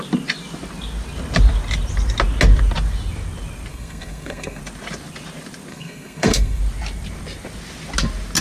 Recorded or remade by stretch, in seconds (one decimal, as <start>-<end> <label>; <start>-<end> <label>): 0.0-3.7 recorded; 3.7-4.6 remade; 4.6-5.7 recorded; 5.7-6.6 remade; 6.6-8.4 recorded